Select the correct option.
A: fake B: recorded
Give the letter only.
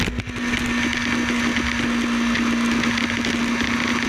B